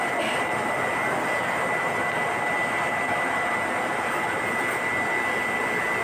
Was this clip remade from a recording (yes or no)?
no